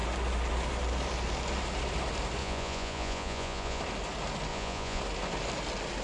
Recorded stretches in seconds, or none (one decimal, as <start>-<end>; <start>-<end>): 0.0-2.4; 3.8-4.5; 5.0-6.0